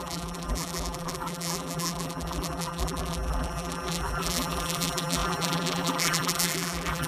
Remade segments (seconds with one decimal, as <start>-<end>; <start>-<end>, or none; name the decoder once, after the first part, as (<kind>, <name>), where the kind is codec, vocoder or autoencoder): 0.0-7.1 (vocoder, BigVGAN v2)